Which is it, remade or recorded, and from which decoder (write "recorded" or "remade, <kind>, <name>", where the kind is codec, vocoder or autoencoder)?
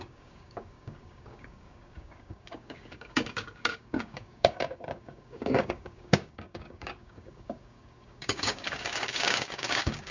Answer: remade, codec, DAC